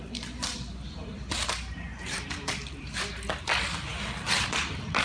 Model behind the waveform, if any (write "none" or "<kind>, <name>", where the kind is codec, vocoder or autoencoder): vocoder, BigVGAN v2